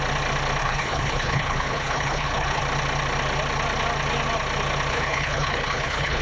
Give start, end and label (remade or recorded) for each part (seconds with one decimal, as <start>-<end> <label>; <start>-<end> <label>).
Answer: 0.0-0.6 recorded; 0.6-2.6 remade; 2.6-4.9 recorded; 4.9-6.2 remade